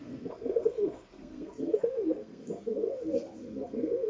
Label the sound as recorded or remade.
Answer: remade